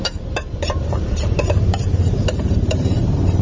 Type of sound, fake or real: fake